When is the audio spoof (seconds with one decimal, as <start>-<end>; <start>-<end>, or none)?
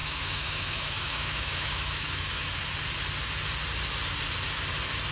0.0-2.5